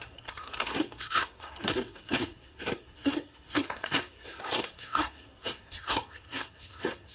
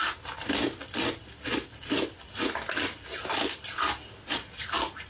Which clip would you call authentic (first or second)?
second